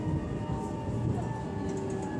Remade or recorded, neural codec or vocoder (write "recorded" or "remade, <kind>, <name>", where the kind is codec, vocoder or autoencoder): recorded